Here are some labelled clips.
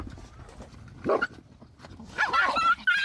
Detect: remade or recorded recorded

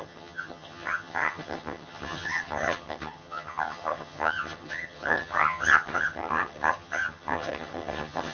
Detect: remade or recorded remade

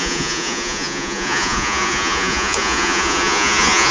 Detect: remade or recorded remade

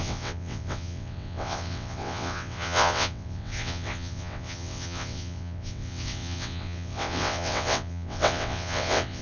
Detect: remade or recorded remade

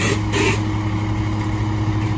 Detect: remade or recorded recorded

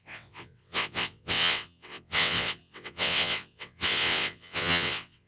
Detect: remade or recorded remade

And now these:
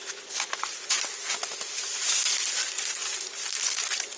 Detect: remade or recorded recorded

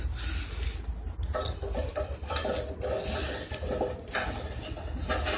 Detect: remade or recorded recorded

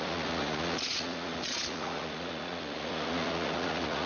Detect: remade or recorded remade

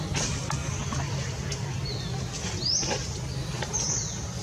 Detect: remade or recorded recorded